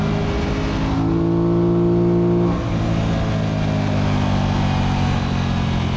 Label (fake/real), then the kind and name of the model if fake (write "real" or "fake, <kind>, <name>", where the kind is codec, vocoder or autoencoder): real